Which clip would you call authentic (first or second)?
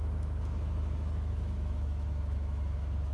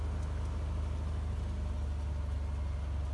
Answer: second